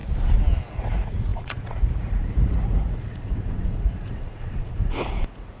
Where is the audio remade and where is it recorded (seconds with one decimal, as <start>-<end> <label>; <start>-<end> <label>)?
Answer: 0.0-0.7 recorded; 0.7-5.6 remade

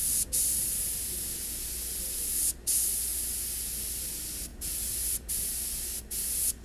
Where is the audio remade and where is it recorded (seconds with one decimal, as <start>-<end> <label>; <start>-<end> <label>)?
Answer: 0.0-6.6 recorded

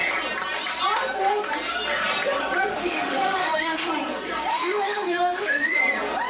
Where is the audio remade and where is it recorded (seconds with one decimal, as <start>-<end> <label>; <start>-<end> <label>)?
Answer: 0.0-2.7 recorded; 2.7-3.9 remade; 3.9-4.5 recorded; 4.5-5.8 remade; 5.8-6.3 recorded

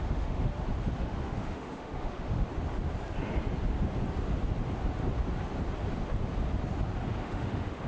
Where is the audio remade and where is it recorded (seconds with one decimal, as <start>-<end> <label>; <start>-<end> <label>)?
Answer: 0.0-0.5 remade; 0.5-1.0 recorded; 1.0-2.5 remade; 2.5-7.2 recorded; 7.2-7.9 remade

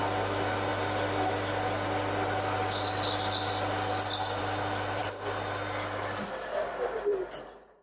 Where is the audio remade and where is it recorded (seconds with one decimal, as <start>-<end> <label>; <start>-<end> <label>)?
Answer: 0.0-7.8 recorded